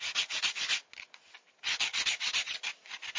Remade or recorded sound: recorded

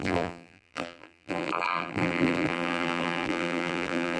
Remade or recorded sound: remade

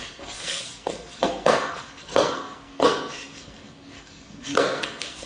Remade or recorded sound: remade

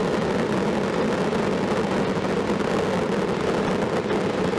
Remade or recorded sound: recorded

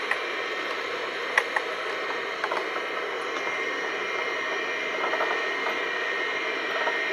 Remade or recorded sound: remade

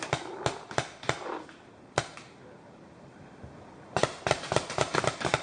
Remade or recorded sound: recorded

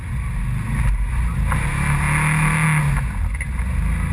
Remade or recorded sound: recorded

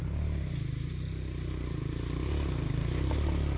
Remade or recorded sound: recorded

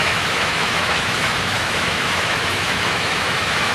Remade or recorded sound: remade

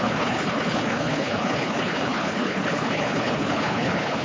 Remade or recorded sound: remade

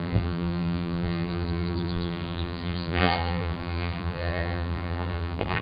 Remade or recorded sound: remade